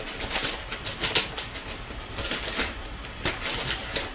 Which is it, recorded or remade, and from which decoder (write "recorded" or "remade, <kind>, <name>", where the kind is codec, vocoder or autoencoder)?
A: recorded